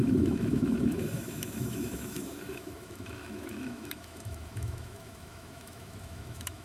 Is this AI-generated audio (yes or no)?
yes